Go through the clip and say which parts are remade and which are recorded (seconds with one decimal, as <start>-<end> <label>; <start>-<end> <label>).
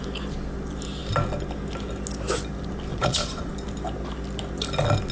0.0-2.9 recorded; 2.9-3.5 remade; 3.5-5.1 recorded